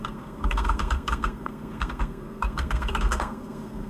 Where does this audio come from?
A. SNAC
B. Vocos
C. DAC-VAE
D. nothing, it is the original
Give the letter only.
A